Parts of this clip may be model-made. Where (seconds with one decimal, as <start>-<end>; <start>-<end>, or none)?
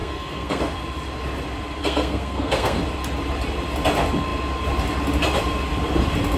0.0-0.6; 1.8-2.8